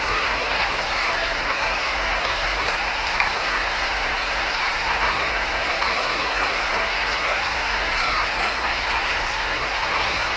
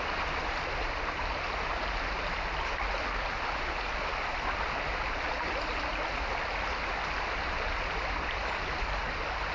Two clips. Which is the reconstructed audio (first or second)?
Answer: first